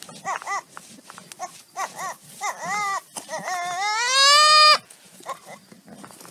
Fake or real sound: real